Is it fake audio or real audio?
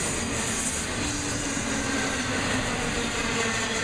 real